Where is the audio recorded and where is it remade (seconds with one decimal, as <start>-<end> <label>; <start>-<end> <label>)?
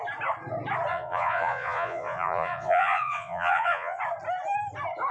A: 0.0-0.9 recorded; 0.9-4.0 remade; 4.0-5.1 recorded